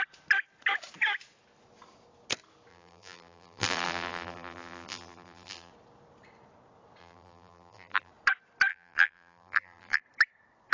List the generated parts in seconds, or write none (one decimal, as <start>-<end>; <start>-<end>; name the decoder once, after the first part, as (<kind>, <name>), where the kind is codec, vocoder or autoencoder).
2.7-5.7 (vocoder, BigVGAN v2); 7.0-8.1; 8.7-10.0